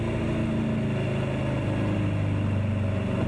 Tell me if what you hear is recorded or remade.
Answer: recorded